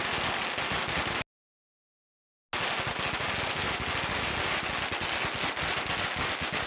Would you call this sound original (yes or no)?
yes